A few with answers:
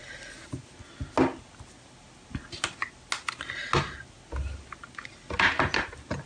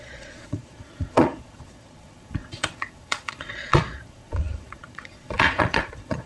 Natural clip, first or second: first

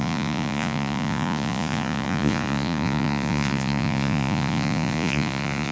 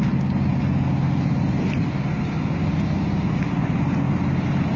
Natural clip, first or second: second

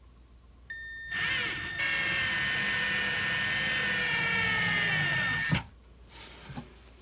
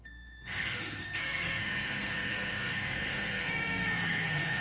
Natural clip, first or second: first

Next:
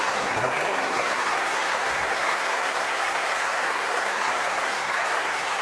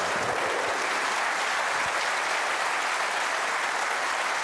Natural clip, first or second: second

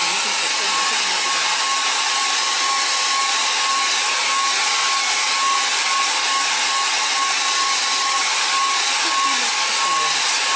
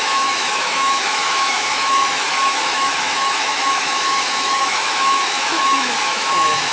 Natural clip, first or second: first